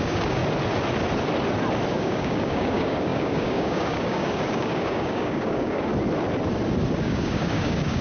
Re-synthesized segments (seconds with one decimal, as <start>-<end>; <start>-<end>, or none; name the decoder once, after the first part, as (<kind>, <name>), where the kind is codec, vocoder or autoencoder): 0.0-0.4 (codec, DAC); 1.9-5.9; 7.0-8.0